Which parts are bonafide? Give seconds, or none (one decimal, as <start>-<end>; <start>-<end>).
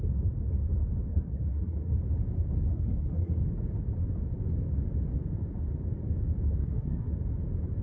0.0-1.1; 1.9-2.7; 3.4-6.6; 7.1-7.8